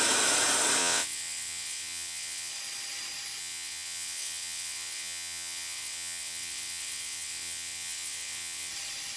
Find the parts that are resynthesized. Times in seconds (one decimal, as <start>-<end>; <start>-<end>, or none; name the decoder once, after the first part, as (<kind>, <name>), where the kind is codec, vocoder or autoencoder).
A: 0.8-2.5 (vocoder, WaveNeXt); 3.4-8.7

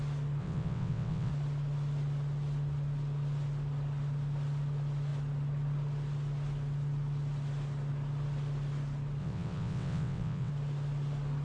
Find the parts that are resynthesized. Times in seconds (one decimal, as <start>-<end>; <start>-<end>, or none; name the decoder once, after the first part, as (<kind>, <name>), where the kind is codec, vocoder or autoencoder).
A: 0.4-1.3 (vocoder, WaveNeXt); 9.2-10.5

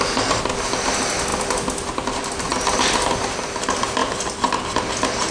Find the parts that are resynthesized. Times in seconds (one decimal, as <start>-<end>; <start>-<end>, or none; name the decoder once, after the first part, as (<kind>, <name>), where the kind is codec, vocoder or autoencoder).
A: none

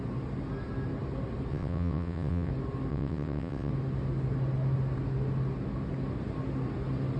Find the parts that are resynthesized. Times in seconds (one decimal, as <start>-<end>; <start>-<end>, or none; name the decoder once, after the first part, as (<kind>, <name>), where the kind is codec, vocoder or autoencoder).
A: 1.5-2.5 (vocoder, WaveNeXt); 2.9-3.7

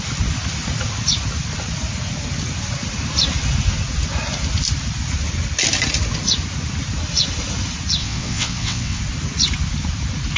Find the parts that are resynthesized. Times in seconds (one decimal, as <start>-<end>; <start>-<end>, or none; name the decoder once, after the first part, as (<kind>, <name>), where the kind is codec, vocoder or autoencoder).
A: 8.0-9.0 (vocoder, WaveNeXt)

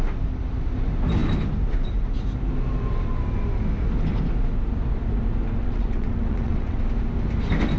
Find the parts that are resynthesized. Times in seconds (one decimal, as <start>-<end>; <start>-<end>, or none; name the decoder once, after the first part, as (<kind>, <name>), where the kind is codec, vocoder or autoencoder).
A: 5.6-6.8 (vocoder, WaveNeXt)

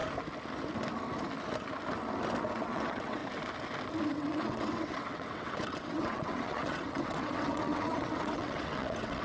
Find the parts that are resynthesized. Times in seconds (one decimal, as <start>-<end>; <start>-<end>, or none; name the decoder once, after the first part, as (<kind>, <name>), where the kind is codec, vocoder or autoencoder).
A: 2.5-3.2 (vocoder, WaveNeXt); 4.1-9.2